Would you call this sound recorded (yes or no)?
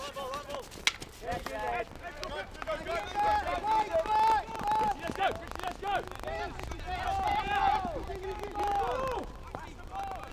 yes